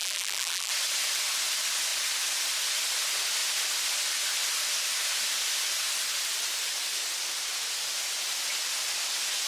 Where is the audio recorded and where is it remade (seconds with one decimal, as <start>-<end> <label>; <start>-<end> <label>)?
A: 0.0-0.7 remade; 0.7-9.5 recorded